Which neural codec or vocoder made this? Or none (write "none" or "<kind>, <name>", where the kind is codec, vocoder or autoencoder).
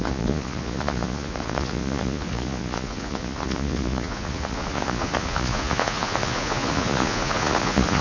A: vocoder, Vocos